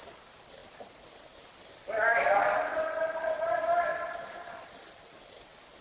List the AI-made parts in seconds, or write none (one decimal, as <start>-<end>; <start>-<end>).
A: 2.7-4.6